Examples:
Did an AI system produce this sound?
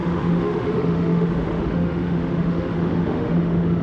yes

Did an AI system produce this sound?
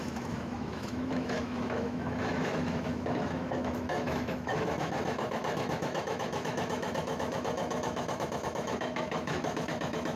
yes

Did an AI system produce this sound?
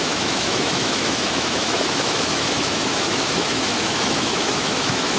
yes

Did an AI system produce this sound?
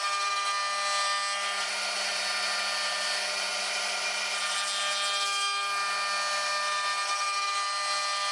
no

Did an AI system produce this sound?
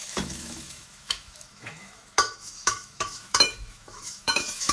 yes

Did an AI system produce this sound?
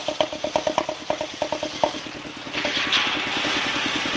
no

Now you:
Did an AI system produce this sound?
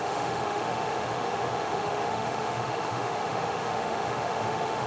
yes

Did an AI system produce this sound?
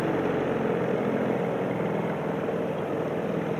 no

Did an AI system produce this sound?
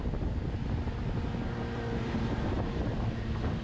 no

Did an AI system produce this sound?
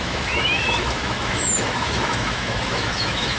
yes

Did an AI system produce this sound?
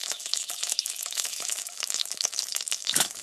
yes